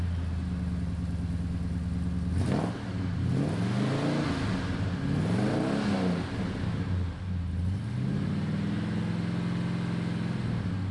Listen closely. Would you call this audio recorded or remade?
recorded